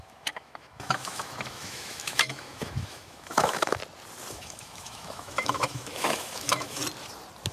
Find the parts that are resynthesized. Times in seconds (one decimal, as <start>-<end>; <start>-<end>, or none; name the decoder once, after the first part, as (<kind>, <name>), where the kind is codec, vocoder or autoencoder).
0.0-3.8 (autoencoder, DAC-VAE); 4.3-6.8